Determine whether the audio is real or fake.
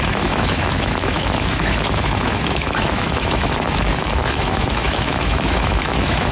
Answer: fake